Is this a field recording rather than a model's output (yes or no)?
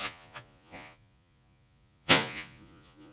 no